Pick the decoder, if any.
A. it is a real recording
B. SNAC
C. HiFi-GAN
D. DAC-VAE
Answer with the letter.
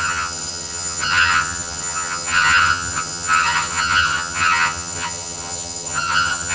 C